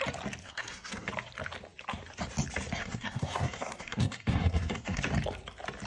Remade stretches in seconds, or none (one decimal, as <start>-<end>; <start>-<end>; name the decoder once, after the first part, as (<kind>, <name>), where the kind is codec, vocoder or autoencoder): 0.4-1.1 (codec, SNAC); 2.8-5.0